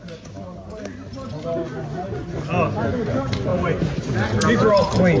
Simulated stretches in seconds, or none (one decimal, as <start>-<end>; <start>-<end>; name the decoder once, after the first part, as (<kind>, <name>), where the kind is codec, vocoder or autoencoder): none